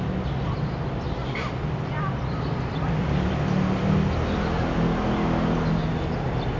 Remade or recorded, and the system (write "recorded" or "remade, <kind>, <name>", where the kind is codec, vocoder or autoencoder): recorded